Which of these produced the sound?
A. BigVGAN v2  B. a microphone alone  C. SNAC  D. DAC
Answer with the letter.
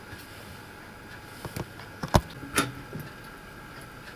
B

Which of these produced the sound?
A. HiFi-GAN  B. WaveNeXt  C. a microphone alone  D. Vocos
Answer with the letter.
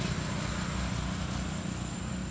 C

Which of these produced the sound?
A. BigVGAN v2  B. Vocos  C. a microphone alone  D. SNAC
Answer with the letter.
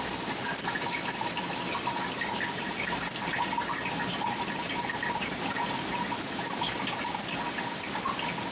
C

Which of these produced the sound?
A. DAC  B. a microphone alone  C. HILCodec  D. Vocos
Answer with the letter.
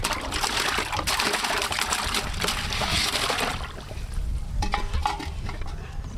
B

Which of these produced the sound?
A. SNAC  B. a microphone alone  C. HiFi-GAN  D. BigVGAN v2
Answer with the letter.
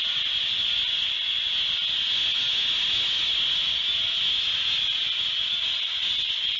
B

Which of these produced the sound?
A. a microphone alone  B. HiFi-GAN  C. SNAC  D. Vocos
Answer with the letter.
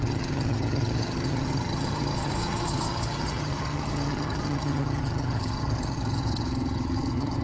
B